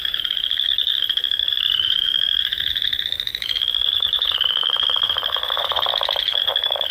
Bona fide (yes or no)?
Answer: no